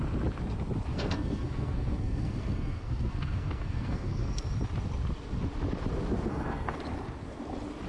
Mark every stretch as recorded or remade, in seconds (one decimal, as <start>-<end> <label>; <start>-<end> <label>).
0.0-0.9 recorded; 0.9-4.4 remade; 4.4-6.3 recorded; 6.3-6.8 remade; 6.8-7.9 recorded